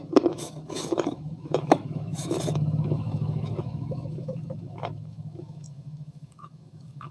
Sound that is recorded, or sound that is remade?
remade